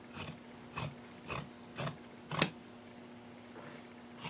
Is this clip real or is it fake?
real